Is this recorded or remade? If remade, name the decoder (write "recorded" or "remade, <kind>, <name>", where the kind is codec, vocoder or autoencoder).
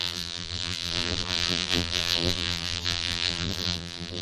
remade, vocoder, BigVGAN v2